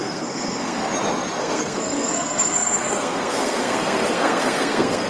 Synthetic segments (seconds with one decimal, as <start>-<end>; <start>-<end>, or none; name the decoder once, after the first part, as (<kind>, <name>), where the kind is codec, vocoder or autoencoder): 0.0-0.8 (codec, SNAC); 1.4-5.1